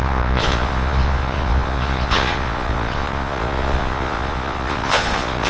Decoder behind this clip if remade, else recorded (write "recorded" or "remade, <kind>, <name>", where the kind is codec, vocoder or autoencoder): remade, vocoder, Vocos